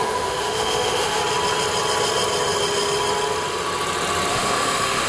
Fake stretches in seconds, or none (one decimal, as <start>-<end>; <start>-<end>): 0.0-1.2; 4.3-5.1

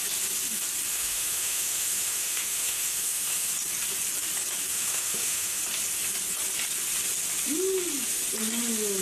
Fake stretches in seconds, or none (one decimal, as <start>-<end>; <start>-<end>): 0.9-3.5; 4.7-5.6

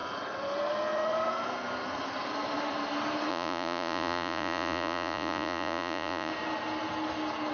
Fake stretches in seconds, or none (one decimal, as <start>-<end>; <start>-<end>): 3.3-6.3

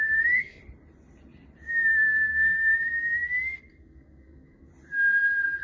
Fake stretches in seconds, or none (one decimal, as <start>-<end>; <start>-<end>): 0.0-0.6; 2.3-2.9; 3.6-4.7

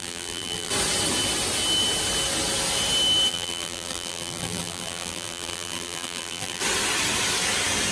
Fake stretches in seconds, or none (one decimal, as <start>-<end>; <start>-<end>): 0.0-0.7; 3.3-6.6

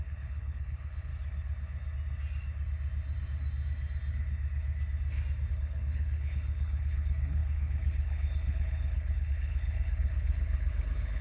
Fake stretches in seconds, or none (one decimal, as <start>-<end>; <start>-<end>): 0.0-1.1; 5.5-11.2

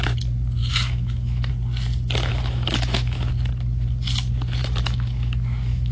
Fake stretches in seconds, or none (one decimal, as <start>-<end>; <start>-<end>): 0.6-1.5; 2.3-3.3; 4.6-5.9